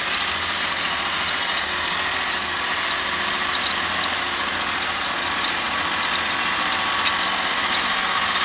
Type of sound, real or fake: real